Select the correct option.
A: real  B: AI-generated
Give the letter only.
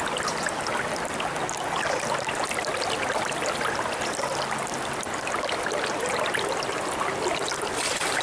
A